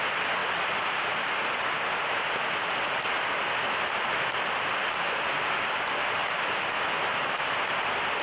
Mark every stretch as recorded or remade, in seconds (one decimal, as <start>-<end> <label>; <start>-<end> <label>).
0.0-8.2 recorded